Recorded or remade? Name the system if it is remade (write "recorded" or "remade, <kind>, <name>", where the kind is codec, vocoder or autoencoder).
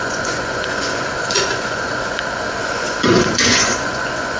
remade, vocoder, Vocos